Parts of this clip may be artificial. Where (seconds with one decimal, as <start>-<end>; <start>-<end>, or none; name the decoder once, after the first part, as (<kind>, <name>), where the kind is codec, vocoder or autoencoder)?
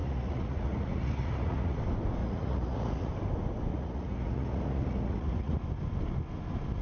0.0-1.8 (vocoder, Vocos); 2.2-3.1; 3.7-5.6